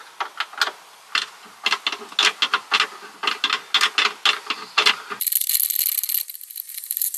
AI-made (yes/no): no